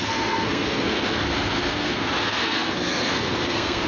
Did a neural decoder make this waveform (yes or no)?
yes